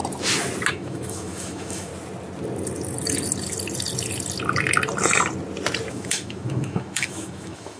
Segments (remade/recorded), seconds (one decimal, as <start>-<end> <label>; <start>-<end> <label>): 0.0-0.7 recorded; 0.7-1.9 remade; 1.9-5.9 recorded; 5.9-7.8 remade